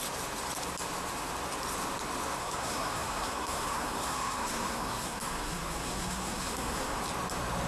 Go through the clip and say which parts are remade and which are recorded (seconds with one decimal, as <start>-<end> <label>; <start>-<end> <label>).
0.0-2.4 recorded; 2.4-7.0 remade; 7.0-7.7 recorded